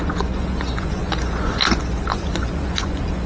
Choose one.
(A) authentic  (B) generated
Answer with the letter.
B